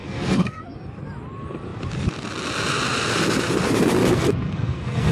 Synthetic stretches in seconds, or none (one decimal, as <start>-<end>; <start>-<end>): 0.0-0.6; 4.0-5.1